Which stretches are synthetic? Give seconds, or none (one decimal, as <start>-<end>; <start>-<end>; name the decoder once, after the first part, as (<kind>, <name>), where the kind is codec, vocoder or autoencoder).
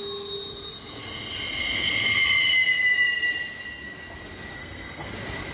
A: 4.6-5.1 (codec, SNAC)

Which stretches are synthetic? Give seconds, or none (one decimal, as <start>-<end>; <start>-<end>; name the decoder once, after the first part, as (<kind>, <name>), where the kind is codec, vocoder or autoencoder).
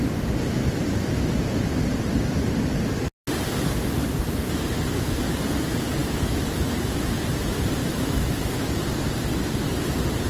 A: 6.0-6.7 (autoencoder, DAC-VAE); 7.8-8.7